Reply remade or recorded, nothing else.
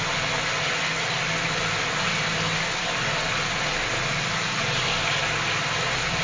recorded